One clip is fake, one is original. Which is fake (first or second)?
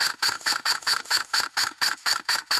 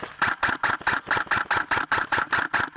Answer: first